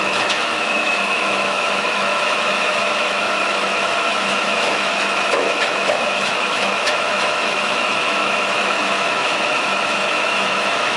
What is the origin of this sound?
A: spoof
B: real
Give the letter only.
A